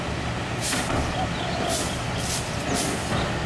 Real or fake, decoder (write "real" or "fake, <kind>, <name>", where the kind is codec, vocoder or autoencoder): real